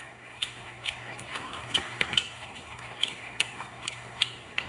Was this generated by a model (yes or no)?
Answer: yes